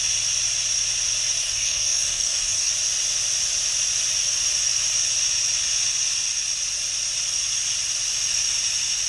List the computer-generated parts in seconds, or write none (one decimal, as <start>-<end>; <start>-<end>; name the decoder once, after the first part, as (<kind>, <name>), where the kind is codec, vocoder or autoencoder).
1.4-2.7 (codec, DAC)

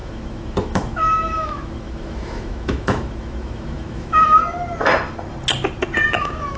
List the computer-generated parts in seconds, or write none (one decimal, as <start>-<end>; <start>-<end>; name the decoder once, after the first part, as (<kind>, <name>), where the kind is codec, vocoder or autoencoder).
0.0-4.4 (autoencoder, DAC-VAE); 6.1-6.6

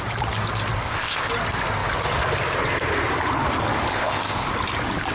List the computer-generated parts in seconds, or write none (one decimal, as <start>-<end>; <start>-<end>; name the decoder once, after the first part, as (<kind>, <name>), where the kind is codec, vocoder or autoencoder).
0.8-1.3 (codec, ZipCodec); 3.9-4.5

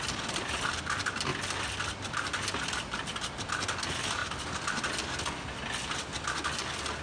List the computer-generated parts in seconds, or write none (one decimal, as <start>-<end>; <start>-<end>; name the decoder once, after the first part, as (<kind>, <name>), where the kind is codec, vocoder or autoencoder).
none

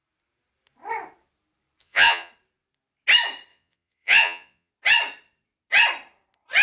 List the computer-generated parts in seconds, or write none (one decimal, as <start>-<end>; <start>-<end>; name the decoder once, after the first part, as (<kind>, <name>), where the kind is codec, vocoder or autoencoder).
1.8-2.3 (vocoder, Vocos); 3.5-4.7

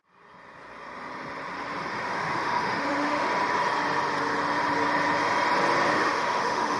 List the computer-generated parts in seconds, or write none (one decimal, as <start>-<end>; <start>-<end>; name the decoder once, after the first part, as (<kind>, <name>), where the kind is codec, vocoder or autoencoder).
1.9-3.3 (autoencoder, DAC-VAE); 5.9-6.8

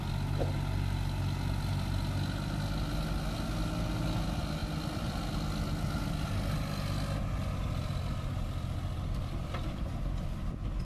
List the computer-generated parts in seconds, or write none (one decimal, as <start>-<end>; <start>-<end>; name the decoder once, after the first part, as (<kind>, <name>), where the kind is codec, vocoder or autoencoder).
none